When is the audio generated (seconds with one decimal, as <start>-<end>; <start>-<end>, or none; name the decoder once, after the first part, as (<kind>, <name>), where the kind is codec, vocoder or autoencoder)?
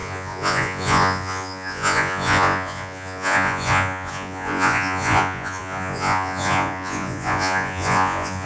0.0-8.5 (vocoder, Vocos)